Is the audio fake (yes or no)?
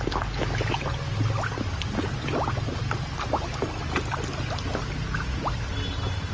no